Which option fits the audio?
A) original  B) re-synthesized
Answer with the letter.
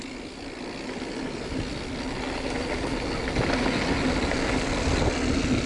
A